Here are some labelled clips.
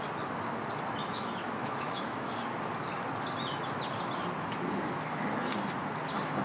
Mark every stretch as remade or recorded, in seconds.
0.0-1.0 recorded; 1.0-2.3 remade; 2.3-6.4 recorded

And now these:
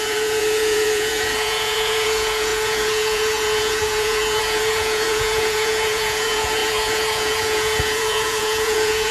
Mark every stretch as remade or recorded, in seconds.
0.0-9.1 remade

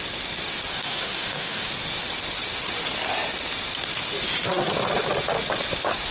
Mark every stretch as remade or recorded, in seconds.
0.0-0.7 recorded; 0.7-1.7 remade; 1.7-6.1 recorded